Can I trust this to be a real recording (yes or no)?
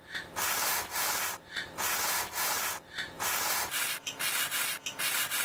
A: yes